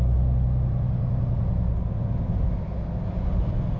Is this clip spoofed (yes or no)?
no